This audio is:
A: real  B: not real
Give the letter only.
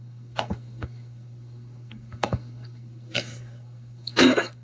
B